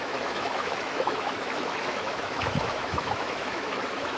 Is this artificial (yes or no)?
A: yes